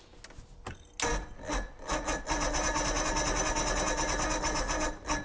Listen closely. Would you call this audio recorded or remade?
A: recorded